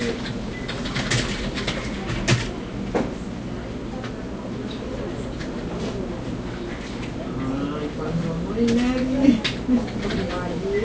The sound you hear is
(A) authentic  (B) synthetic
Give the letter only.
A